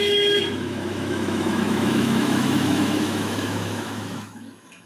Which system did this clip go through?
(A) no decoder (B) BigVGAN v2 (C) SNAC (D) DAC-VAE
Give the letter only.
D